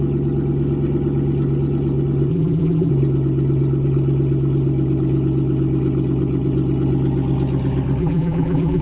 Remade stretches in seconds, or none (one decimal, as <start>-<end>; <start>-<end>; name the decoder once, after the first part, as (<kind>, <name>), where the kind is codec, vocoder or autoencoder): 2.3-2.9 (vocoder, BigVGAN v2); 8.0-8.8